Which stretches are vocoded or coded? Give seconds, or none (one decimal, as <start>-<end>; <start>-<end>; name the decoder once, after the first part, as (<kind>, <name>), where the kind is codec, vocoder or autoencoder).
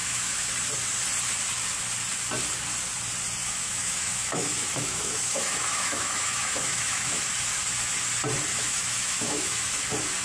0.0-0.5 (autoencoder, DAC-VAE); 3.4-7.2; 8.5-9.7